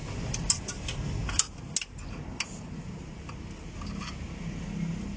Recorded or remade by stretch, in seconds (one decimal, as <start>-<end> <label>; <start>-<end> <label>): 0.0-5.2 recorded